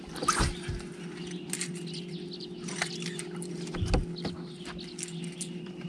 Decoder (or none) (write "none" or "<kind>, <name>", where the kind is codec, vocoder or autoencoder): none